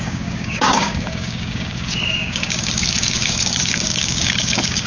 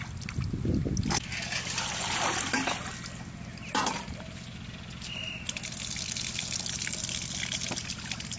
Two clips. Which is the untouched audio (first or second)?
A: second